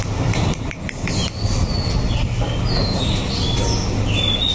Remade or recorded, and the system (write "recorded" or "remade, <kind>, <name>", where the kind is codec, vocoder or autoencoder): recorded